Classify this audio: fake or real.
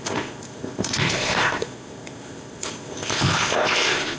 fake